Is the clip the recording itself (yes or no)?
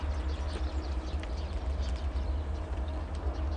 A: yes